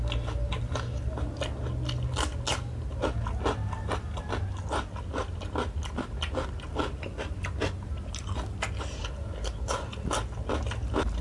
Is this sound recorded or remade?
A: recorded